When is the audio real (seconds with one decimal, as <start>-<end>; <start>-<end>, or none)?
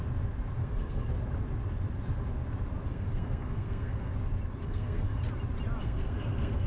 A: 0.0-0.6; 1.1-2.9; 4.1-4.6; 5.2-5.8